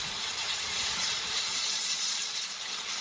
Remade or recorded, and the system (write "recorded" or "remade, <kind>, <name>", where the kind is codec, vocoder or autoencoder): remade, vocoder, Vocos